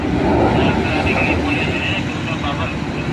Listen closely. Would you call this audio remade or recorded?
recorded